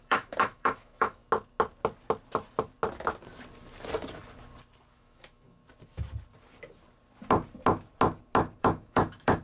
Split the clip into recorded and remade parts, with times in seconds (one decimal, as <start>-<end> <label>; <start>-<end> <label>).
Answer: 0.0-1.2 remade; 1.2-4.9 recorded; 4.9-5.6 remade; 5.6-8.6 recorded; 8.6-9.4 remade